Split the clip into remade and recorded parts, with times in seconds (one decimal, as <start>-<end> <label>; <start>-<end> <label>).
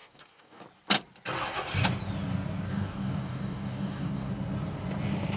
0.0-0.6 remade; 0.6-2.7 recorded; 2.7-4.3 remade; 4.3-5.4 recorded